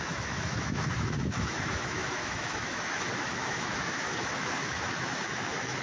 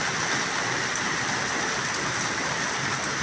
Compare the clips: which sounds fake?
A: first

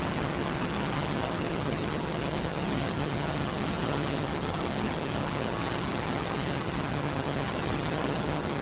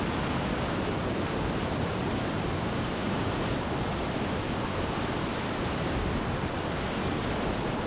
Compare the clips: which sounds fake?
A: first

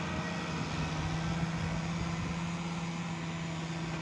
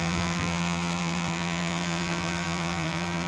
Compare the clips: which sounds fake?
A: second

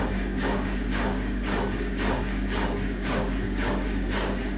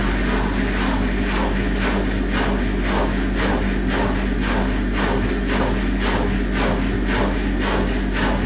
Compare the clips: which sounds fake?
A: first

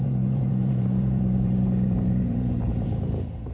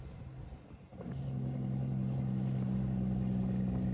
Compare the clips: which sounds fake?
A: first